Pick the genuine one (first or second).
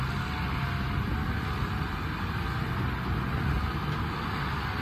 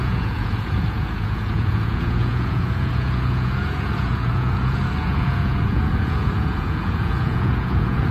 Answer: first